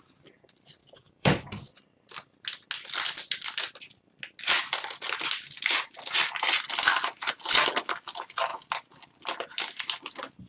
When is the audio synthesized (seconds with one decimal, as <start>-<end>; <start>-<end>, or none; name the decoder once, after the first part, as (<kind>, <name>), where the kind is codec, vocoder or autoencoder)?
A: 0.8-1.7 (codec, DAC)